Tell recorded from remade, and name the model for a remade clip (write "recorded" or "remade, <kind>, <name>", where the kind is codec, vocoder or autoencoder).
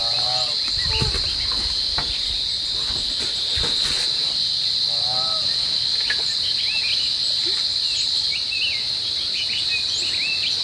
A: recorded